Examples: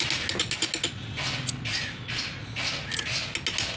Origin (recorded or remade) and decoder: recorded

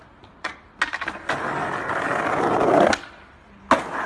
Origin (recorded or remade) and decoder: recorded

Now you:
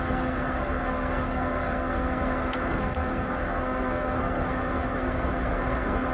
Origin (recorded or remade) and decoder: remade, codec, SNAC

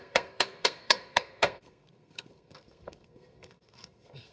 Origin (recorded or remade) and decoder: remade, codec, SNAC